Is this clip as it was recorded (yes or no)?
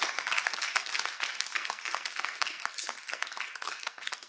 no